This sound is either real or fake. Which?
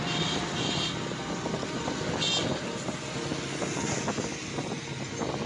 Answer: real